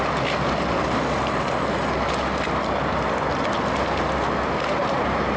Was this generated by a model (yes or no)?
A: no